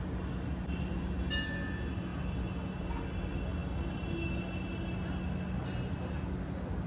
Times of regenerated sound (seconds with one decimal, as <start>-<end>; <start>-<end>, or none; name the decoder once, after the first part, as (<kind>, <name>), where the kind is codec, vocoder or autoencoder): none